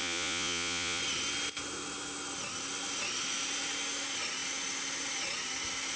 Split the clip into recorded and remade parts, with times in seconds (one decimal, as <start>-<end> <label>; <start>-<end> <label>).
0.0-1.0 remade; 1.0-6.0 recorded

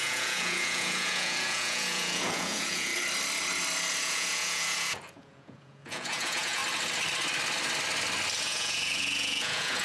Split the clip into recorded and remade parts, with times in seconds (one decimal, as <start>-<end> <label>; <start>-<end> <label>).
0.0-2.9 remade; 2.9-4.0 recorded; 4.0-6.6 remade; 6.6-8.4 recorded; 8.4-9.8 remade

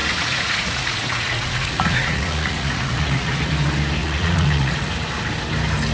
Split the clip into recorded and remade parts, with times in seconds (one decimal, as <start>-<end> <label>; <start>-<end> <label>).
0.0-3.5 remade; 3.5-4.0 recorded; 4.0-4.9 remade; 4.9-5.9 recorded

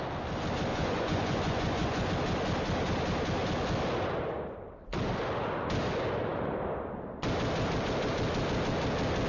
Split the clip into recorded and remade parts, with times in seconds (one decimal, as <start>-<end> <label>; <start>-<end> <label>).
0.0-0.7 recorded; 0.7-2.1 remade; 2.1-9.3 recorded

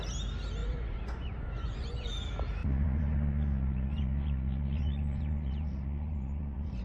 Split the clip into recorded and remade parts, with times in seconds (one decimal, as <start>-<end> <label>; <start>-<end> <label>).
0.0-0.6 recorded; 0.6-2.1 remade; 2.1-2.6 recorded; 2.6-6.8 remade

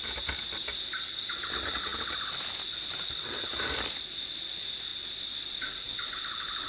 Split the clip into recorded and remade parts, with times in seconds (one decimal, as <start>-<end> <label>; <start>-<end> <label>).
0.0-6.7 recorded